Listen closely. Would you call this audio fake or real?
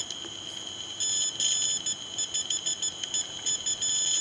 real